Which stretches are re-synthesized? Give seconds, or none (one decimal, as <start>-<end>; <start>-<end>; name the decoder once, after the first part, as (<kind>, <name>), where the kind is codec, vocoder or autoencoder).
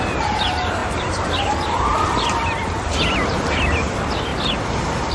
0.8-3.9 (vocoder, BigVGAN v2)